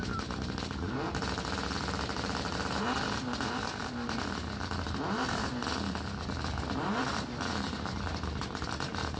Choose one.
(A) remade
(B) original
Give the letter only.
A